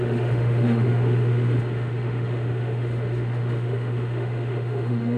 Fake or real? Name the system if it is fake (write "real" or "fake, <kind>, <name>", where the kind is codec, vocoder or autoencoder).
fake, autoencoder, DAC-VAE